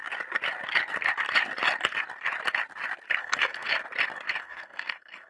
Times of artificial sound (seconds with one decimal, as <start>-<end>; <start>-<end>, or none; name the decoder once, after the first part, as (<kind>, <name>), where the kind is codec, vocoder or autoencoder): 3.2-3.7 (codec, SNAC); 4.4-5.3